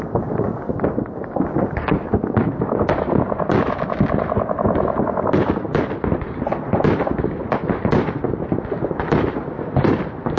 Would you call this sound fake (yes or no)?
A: no